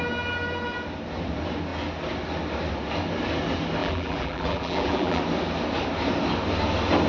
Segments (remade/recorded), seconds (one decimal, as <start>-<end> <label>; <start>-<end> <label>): 0.0-3.8 recorded; 3.8-5.2 remade; 5.2-7.1 recorded